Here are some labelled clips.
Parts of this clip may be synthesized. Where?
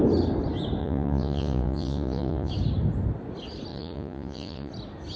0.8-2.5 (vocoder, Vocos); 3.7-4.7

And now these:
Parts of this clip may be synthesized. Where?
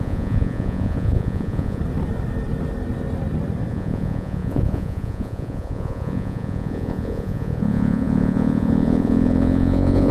0.0-1.8 (vocoder, Vocos); 3.7-10.1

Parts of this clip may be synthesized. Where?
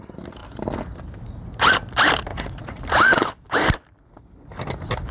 2.3-2.8 (vocoder, Vocos)